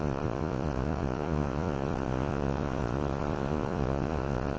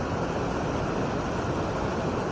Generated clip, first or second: first